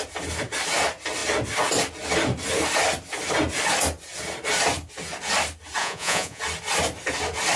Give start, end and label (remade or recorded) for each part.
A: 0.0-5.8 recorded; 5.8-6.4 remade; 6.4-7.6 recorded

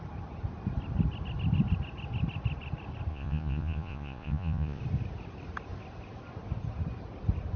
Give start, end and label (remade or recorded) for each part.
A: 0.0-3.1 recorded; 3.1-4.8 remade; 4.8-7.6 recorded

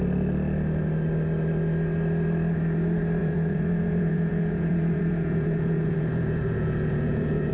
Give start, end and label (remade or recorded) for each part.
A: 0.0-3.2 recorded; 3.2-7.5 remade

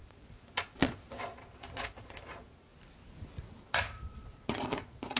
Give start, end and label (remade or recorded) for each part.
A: 0.0-2.7 remade; 2.7-3.6 recorded; 3.6-5.2 remade